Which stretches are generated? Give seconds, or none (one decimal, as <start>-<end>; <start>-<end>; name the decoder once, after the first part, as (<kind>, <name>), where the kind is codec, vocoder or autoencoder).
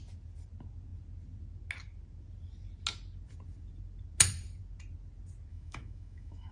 5.5-6.5 (autoencoder, DAC-VAE)